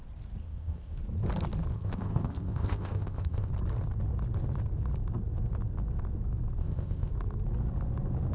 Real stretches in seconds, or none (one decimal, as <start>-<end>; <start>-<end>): 0.0-0.4; 1.0-1.7; 3.5-6.6; 7.1-8.3